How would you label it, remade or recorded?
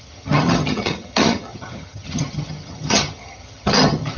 remade